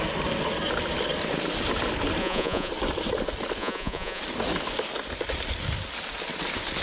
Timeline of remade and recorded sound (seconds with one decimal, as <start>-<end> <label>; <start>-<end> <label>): 0.0-2.2 recorded; 2.2-2.7 remade; 2.7-3.6 recorded; 3.6-4.2 remade; 4.2-6.8 recorded